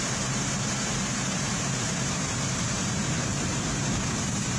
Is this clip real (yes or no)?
no